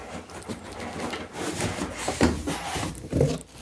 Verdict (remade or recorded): recorded